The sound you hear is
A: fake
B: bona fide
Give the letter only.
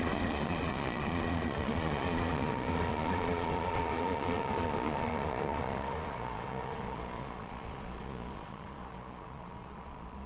A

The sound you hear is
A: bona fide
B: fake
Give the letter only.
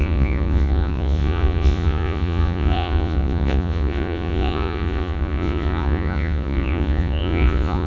B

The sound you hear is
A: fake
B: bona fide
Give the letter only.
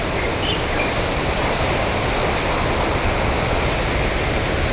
B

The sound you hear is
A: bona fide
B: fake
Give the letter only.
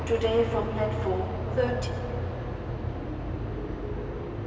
A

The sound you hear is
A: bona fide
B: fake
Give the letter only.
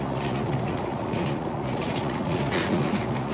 B